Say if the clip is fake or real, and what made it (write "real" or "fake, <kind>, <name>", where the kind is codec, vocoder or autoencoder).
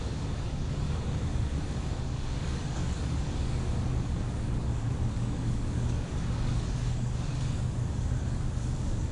fake, codec, DAC